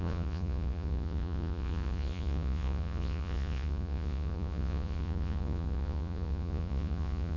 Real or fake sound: fake